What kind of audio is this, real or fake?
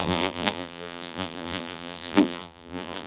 fake